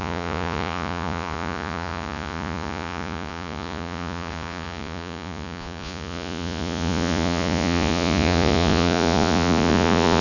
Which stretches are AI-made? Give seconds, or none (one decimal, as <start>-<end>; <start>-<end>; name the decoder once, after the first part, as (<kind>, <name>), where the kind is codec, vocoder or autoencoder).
0.0-10.2 (vocoder, Vocos)